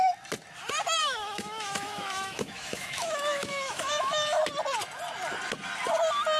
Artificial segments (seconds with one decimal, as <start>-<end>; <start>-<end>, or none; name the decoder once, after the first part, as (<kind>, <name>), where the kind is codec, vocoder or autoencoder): 1.0-4.4 (autoencoder, DAC-VAE)